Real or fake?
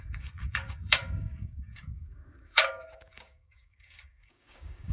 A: fake